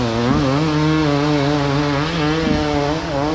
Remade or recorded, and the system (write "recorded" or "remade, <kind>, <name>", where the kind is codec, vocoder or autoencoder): recorded